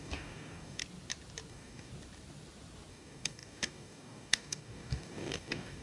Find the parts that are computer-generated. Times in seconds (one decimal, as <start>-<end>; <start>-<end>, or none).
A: 0.0-0.8; 1.5-1.9; 2.9-5.8